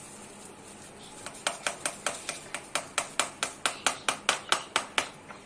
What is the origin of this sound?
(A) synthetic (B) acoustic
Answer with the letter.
B